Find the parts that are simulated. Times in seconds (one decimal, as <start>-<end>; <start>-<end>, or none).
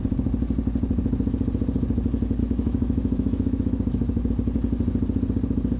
2.4-4.3